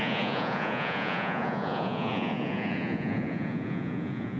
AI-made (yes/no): yes